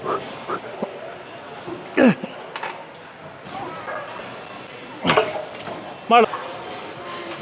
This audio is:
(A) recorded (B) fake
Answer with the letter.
A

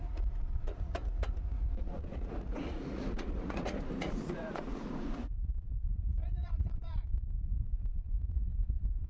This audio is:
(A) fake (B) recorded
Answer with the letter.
A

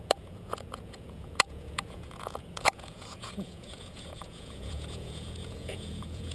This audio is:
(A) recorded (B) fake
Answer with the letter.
B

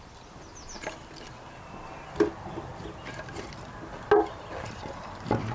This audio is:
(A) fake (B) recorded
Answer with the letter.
B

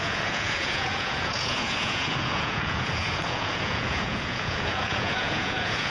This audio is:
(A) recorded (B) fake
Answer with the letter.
B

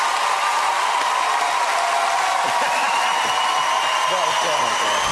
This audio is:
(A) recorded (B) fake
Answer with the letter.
A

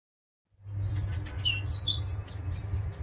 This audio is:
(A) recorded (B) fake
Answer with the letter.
A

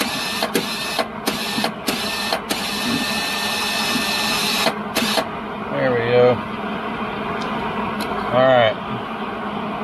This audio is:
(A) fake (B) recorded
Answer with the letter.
B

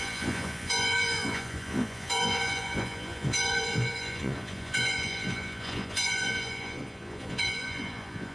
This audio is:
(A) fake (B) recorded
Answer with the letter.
A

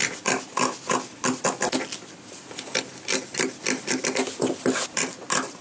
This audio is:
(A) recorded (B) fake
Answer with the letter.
A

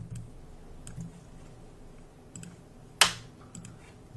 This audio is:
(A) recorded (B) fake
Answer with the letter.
A